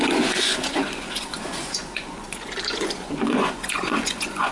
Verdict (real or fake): fake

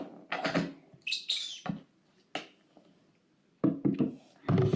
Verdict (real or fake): real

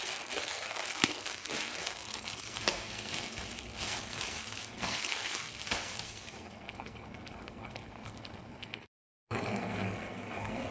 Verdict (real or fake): fake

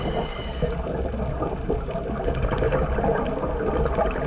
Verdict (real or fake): real